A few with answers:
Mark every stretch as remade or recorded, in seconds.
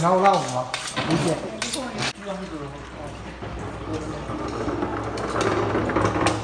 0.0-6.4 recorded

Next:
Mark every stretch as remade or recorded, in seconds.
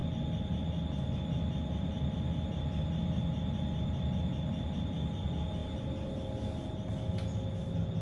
0.0-8.0 recorded